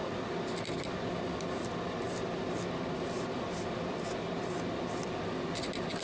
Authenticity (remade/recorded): recorded